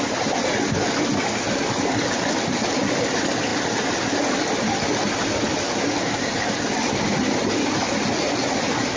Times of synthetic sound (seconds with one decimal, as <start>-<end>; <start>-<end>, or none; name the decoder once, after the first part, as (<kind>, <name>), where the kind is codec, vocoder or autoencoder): none